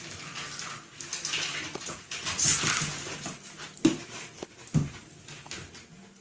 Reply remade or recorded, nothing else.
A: recorded